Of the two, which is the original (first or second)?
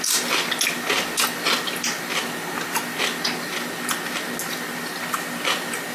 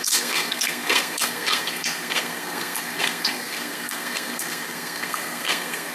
first